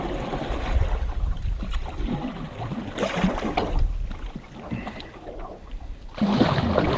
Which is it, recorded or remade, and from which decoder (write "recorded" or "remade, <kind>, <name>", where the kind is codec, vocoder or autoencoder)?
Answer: recorded